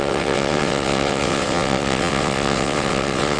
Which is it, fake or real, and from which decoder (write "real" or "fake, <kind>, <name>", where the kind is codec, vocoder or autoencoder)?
fake, vocoder, WaveNeXt